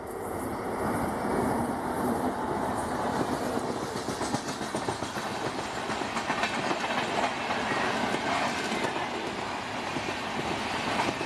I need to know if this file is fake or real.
real